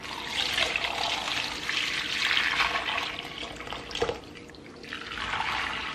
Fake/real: real